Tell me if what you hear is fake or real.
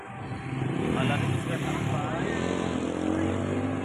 real